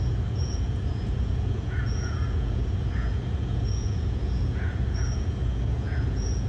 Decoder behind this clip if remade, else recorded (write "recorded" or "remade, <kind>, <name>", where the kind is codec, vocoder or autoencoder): remade, vocoder, Vocos